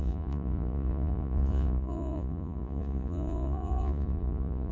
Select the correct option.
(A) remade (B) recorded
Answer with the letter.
A